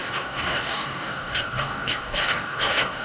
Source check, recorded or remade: remade